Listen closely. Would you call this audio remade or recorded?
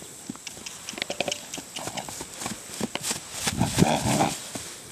recorded